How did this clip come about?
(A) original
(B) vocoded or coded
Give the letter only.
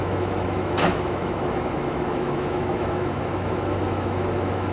B